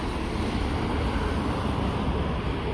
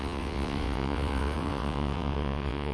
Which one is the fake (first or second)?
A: second